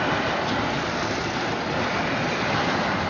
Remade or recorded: recorded